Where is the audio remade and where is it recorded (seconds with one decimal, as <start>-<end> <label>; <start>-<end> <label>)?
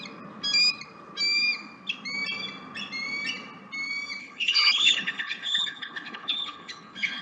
0.0-4.2 recorded; 4.2-7.2 remade